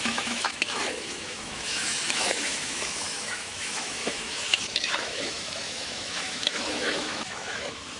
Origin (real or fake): fake